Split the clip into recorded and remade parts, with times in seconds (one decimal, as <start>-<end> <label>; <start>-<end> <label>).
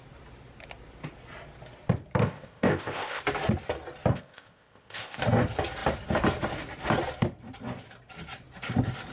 0.0-2.2 recorded; 2.2-3.2 remade; 3.2-4.1 recorded; 4.1-5.2 remade; 5.2-9.1 recorded